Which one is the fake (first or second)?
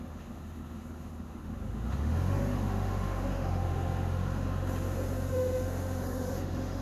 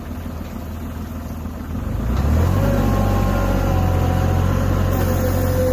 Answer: first